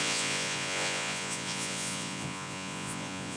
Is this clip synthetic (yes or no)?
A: yes